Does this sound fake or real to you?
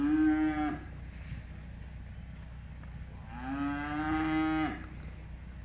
real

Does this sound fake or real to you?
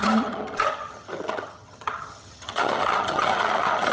fake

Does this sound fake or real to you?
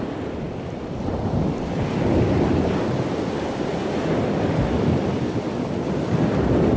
real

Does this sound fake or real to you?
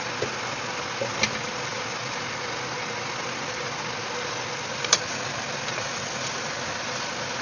real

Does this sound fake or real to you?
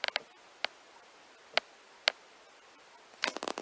real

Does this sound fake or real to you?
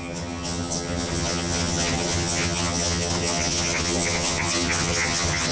fake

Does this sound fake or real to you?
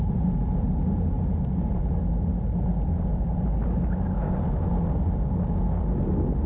real